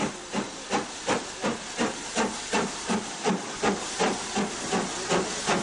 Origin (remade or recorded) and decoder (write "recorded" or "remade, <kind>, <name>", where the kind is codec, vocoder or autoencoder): recorded